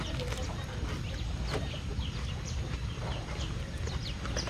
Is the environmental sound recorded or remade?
recorded